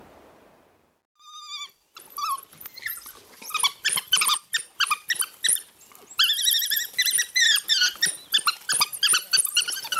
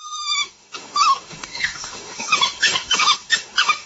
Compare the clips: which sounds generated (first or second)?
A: second